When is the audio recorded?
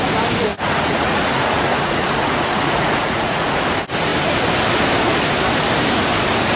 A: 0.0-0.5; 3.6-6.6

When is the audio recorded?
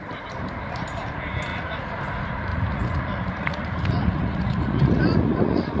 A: 0.0-1.5; 2.0-2.5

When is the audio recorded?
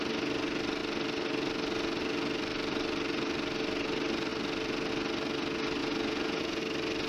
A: 0.0-5.8; 6.6-7.1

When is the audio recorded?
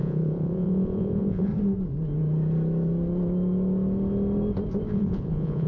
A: 1.5-4.9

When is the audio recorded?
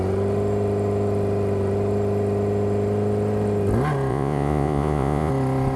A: 0.0-4.1; 5.3-5.8